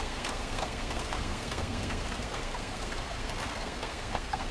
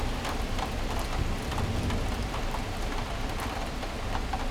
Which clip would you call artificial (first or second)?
first